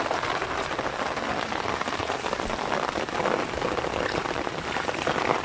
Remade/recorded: remade